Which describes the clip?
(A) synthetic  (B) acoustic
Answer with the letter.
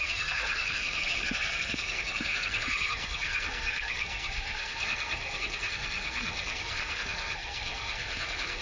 A